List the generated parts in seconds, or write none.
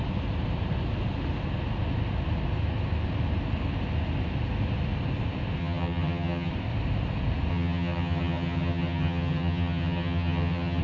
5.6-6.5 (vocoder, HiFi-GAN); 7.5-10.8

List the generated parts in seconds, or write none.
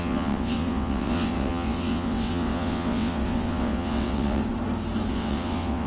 0.0-4.4 (vocoder, WaveNeXt); 5.1-5.9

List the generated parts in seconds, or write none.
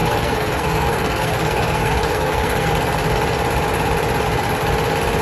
0.0-2.7 (codec, SNAC)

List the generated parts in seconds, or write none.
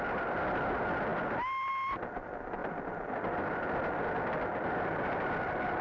none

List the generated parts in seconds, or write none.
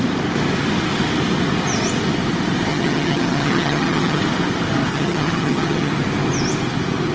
2.7-4.2 (vocoder, HiFi-GAN); 4.9-5.9